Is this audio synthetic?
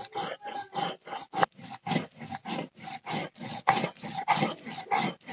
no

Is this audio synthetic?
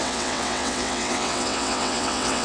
yes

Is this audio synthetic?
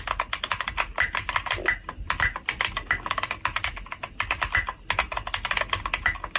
no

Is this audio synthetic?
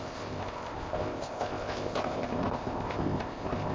yes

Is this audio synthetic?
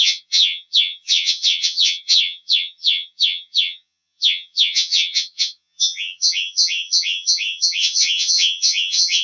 yes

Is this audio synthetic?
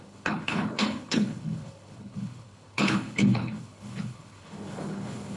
yes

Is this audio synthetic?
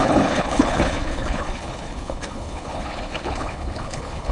yes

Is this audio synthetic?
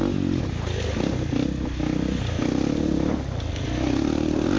no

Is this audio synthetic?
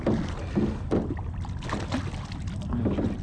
no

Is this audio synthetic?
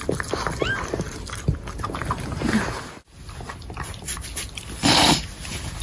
no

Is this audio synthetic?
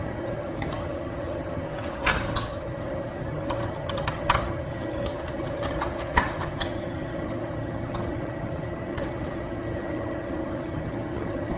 yes